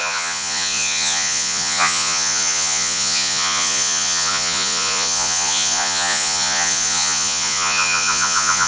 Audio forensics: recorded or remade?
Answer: remade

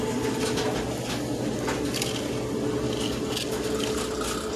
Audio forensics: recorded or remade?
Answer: recorded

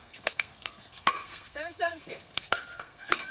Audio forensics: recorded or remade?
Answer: remade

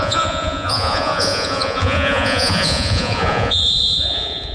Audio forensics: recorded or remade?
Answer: remade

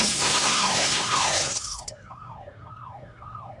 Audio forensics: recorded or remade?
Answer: remade